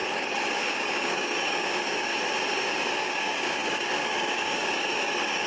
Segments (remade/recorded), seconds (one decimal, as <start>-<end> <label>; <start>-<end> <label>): 0.0-0.5 recorded; 0.5-2.1 remade; 2.1-2.7 recorded; 2.7-5.5 remade